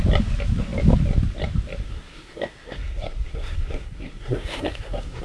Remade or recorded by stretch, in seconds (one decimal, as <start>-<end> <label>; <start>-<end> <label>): 0.0-1.8 recorded; 1.8-5.2 remade